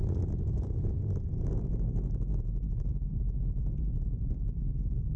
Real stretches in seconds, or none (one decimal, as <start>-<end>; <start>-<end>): 0.7-5.2